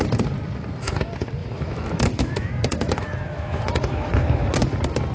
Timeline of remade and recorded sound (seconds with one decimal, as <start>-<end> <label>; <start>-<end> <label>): 0.0-1.4 recorded; 1.4-4.5 remade; 4.5-5.1 recorded